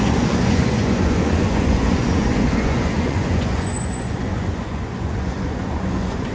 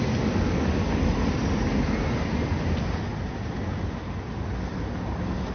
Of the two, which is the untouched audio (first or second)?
second